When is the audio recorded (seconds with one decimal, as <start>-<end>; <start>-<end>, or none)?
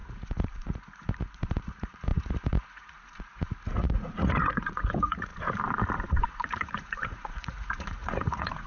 5.3-6.1